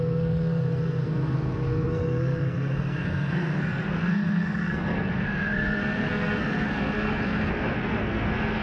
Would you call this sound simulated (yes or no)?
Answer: yes